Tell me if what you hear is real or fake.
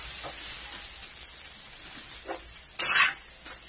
real